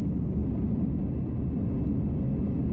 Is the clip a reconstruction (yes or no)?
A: no